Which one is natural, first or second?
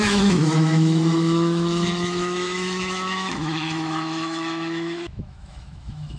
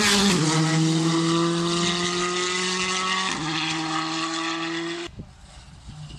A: second